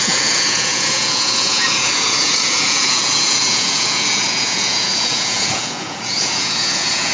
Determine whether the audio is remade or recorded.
remade